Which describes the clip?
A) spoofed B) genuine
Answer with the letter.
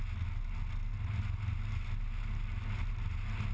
B